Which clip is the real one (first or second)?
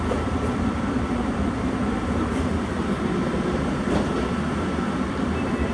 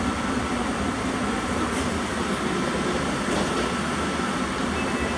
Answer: second